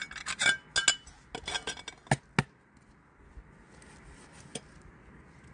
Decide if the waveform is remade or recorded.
recorded